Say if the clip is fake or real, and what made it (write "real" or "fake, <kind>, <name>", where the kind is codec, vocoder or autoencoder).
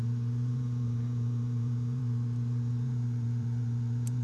fake, vocoder, BigVGAN v2